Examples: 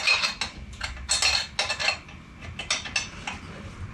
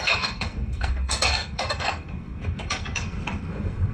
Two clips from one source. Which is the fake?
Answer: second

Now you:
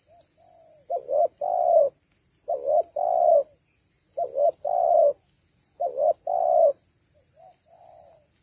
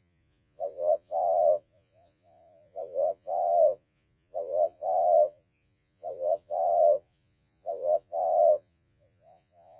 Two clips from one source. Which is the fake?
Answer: second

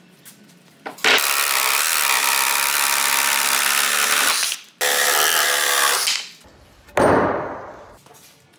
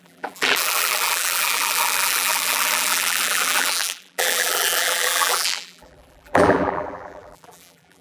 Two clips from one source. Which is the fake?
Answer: second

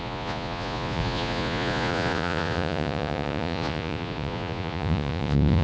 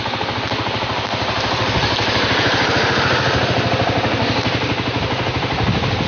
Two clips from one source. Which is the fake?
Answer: first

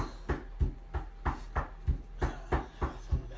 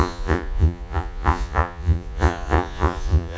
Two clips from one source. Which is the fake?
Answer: second